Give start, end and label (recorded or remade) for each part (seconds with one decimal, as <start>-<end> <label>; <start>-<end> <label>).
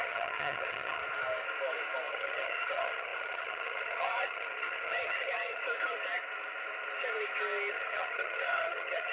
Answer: 0.0-1.0 remade; 1.0-2.1 recorded; 2.1-5.6 remade; 5.6-7.7 recorded; 7.7-9.1 remade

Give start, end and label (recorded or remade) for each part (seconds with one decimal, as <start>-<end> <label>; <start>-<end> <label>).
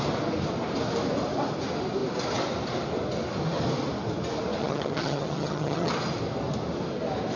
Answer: 0.0-4.6 recorded; 4.6-5.9 remade; 5.9-7.4 recorded